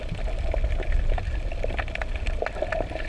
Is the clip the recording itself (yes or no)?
yes